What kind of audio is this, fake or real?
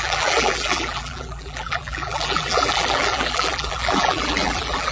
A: fake